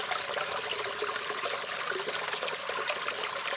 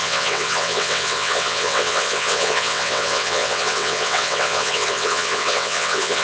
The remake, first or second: second